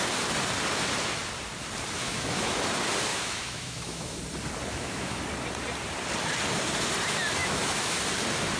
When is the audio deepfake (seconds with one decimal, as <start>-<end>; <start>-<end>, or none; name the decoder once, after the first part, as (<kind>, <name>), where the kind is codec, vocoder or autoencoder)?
2.0-2.6 (autoencoder, DAC-VAE); 3.1-4.2; 4.7-5.2; 7.4-8.0